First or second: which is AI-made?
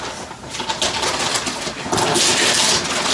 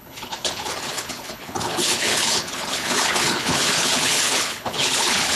second